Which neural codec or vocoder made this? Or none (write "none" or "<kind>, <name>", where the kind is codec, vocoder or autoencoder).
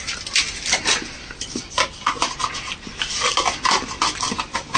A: none